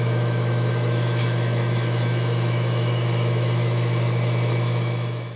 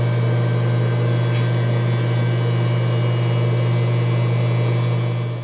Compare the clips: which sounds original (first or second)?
second